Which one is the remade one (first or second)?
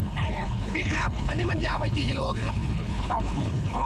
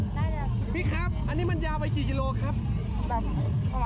first